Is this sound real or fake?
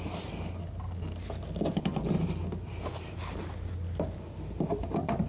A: real